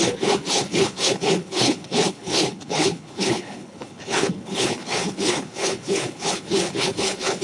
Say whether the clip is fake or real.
fake